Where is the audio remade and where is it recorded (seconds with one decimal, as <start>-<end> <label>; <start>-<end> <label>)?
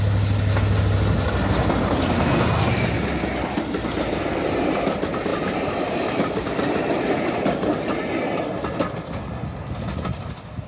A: 0.0-10.7 recorded